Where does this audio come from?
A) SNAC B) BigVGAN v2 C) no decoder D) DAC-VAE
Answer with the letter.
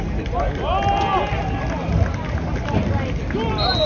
C